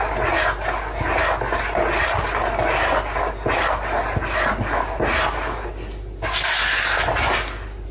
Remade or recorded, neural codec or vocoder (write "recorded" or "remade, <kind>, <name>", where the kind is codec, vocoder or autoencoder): recorded